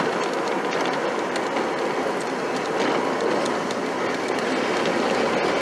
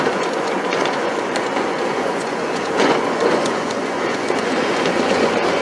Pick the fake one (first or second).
second